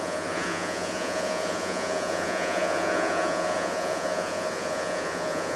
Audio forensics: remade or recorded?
remade